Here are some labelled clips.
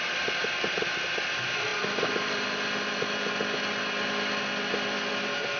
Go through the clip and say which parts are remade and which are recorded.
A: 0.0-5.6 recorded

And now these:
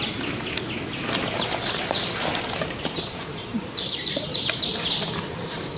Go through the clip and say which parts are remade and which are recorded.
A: 0.0-3.3 recorded; 3.3-5.8 remade

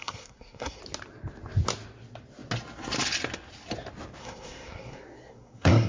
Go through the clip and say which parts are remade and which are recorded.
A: 0.0-0.8 remade; 0.8-4.2 recorded; 4.2-5.9 remade

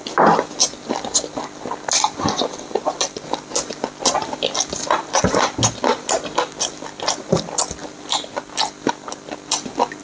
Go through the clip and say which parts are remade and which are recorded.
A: 0.0-10.0 recorded

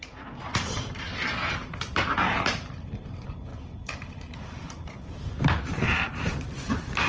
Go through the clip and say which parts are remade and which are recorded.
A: 0.0-3.5 remade; 3.5-4.1 recorded; 4.1-7.1 remade